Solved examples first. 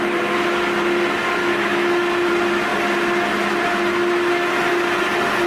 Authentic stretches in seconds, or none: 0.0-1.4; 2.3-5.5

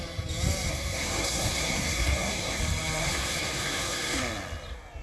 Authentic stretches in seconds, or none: 0.0-0.7; 2.6-3.0; 4.2-5.0